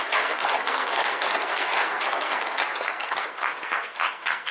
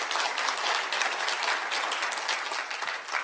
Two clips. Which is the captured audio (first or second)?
second